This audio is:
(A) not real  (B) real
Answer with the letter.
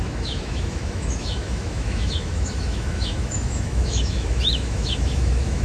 A